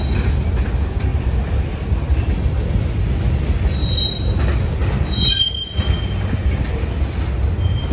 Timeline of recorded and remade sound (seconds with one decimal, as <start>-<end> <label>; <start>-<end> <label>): 0.0-1.1 recorded; 1.1-2.6 remade; 2.6-7.9 recorded